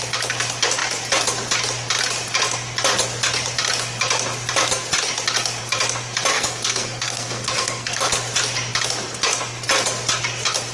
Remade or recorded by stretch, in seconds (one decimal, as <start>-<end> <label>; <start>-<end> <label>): 0.0-6.3 recorded; 6.3-8.1 remade; 8.1-10.7 recorded